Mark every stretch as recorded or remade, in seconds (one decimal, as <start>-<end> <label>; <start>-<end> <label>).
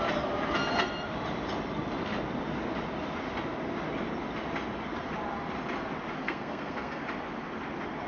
0.0-6.2 recorded; 6.2-7.0 remade; 7.0-8.1 recorded